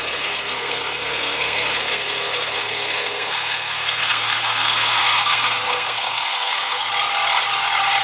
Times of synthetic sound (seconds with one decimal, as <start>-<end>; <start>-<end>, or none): 0.0-6.9